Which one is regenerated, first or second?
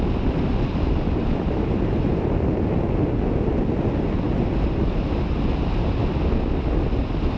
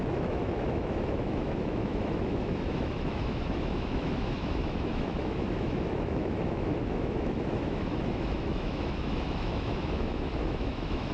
second